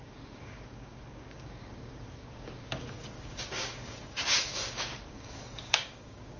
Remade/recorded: remade